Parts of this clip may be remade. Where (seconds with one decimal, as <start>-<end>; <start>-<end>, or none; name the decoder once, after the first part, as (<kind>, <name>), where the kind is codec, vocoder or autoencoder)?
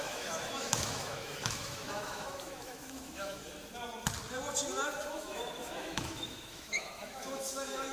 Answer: 0.0-3.4 (autoencoder, DAC-VAE); 5.1-7.9